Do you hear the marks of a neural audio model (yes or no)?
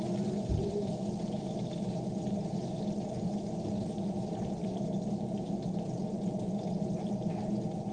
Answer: no